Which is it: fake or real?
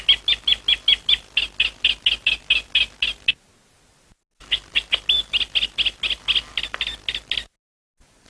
real